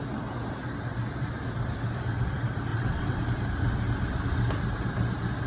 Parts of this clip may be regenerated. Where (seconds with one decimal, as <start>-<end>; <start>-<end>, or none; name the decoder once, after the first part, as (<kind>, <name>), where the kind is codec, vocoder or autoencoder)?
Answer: 2.7-3.2 (vocoder, WaveNeXt)